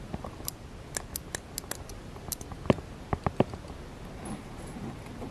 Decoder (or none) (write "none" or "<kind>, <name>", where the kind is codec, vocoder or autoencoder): none